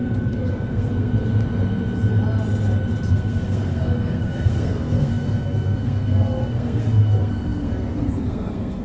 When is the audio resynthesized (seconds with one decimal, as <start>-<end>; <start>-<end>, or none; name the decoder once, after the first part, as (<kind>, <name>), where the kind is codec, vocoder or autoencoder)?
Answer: 0.0-1.1 (codec, SNAC); 3.1-8.8